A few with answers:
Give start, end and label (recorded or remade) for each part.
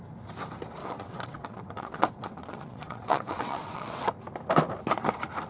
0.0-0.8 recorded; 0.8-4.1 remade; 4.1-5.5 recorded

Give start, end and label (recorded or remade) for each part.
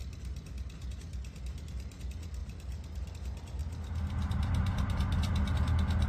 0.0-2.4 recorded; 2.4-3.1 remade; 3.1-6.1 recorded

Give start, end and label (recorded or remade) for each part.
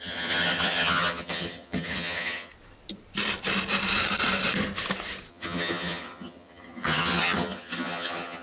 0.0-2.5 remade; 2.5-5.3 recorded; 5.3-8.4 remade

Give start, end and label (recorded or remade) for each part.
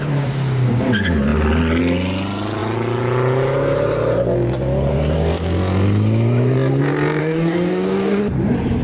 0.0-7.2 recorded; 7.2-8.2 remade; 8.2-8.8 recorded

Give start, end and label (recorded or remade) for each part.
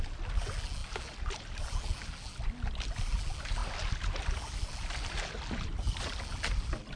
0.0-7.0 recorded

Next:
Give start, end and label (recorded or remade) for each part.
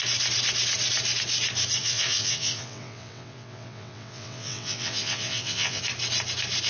0.0-1.8 recorded; 1.8-5.8 remade; 5.8-6.7 recorded